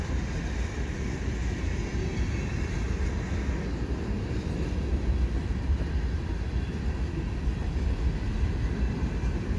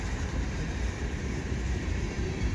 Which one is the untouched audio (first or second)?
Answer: first